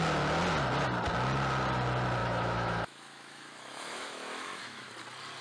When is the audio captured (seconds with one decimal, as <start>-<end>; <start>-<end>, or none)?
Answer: 0.0-2.2; 4.9-5.4